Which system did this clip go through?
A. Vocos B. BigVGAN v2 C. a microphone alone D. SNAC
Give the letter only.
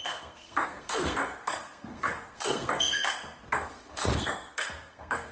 D